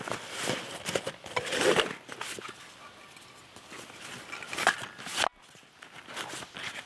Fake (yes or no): no